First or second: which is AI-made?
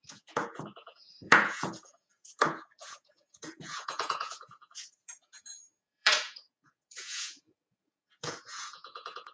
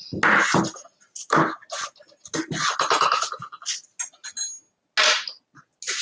first